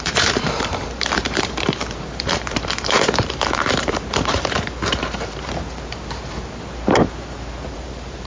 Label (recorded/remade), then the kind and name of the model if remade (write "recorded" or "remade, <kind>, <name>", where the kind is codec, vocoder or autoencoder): remade, vocoder, BigVGAN v2